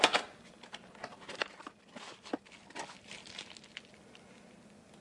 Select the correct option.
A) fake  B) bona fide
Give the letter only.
B